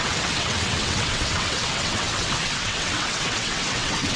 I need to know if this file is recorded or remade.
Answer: remade